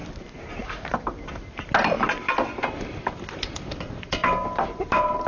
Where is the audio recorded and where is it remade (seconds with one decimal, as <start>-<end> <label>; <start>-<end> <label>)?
0.0-2.8 recorded; 2.8-4.2 remade; 4.2-4.8 recorded; 4.8-5.3 remade